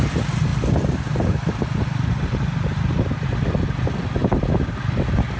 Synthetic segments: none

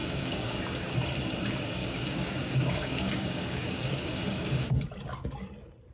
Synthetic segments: 0.0-0.6 (codec, DAC); 1.8-4.8

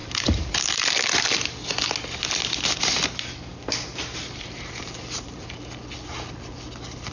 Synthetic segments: 0.0-0.8 (vocoder, BigVGAN v2); 3.5-5.6

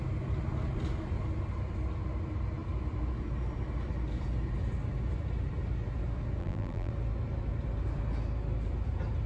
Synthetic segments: 6.4-6.9 (vocoder, BigVGAN v2)

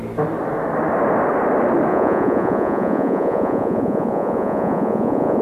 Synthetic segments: 1.9-5.4 (vocoder, Vocos)

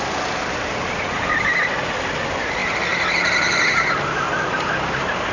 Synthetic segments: none

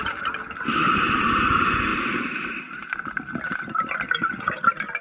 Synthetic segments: 1.9-2.6 (vocoder, BigVGAN v2)

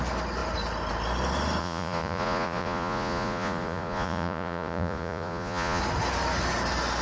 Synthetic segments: 1.6-5.8 (vocoder, Vocos)